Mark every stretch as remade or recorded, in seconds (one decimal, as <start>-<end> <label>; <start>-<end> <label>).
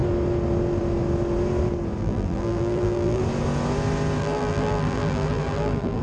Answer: 0.0-2.0 recorded; 2.0-3.2 remade; 3.2-4.2 recorded; 4.2-6.0 remade